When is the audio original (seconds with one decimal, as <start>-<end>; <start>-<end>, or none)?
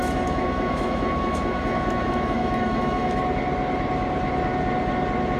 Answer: 3.2-5.4